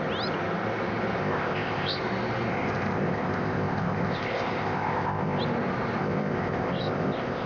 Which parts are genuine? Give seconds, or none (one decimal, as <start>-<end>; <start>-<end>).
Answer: 0.0-1.2; 2.0-2.5; 5.4-6.0